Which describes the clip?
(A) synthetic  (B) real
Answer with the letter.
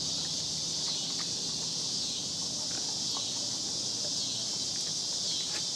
B